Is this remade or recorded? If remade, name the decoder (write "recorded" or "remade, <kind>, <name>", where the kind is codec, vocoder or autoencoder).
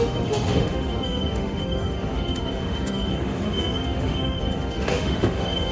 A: remade, autoencoder, DAC-VAE